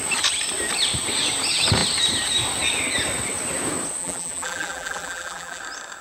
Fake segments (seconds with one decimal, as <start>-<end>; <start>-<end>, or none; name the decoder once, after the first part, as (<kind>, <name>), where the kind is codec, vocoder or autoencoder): 4.0-5.6 (vocoder, BigVGAN v2)